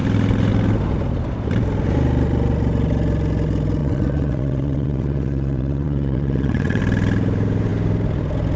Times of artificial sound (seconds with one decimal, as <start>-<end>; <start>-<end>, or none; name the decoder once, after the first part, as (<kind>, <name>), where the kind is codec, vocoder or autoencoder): 3.8-6.8 (vocoder, WaveNeXt)